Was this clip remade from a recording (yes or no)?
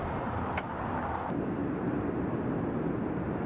no